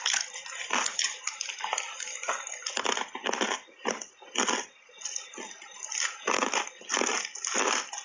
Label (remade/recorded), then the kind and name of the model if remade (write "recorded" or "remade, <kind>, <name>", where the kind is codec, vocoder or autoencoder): recorded